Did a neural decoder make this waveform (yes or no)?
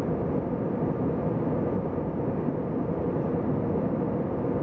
no